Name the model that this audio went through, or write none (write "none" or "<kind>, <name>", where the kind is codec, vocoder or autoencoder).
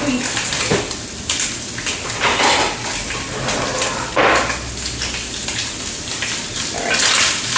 none